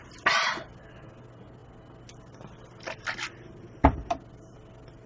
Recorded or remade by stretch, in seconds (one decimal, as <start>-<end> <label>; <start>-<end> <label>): 0.0-5.1 recorded